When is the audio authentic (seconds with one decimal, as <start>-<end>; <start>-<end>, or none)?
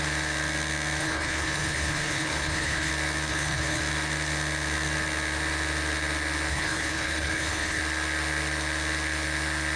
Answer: 0.0-1.0; 2.9-3.3; 3.8-6.5; 7.8-9.8